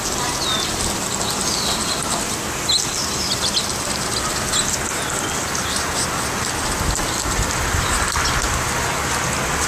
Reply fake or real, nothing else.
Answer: real